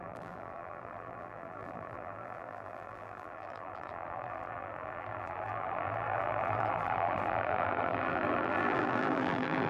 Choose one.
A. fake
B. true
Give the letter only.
A